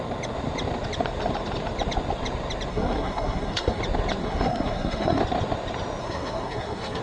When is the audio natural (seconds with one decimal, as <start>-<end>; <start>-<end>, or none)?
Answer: 0.0-2.7; 3.8-4.2; 5.2-6.0